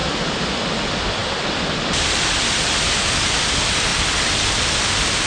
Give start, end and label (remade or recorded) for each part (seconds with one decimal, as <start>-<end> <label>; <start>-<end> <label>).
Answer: 0.0-0.6 remade; 0.6-5.3 recorded